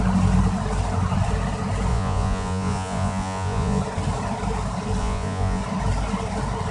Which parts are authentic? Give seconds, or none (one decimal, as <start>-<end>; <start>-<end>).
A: 0.0-1.9; 3.8-5.0; 5.6-6.7